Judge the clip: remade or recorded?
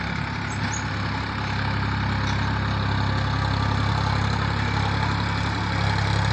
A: recorded